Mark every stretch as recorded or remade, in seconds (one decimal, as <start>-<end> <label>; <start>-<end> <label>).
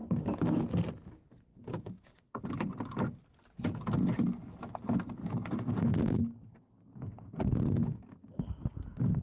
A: 0.0-0.6 remade; 0.6-1.5 recorded; 1.5-2.4 remade; 2.4-5.2 recorded; 5.2-8.4 remade; 8.4-9.2 recorded